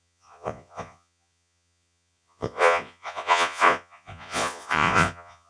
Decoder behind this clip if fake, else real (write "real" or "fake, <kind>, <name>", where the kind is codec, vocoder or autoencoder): fake, vocoder, Vocos